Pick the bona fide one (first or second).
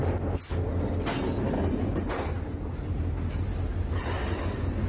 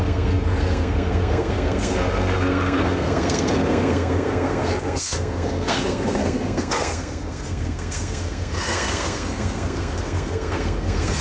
first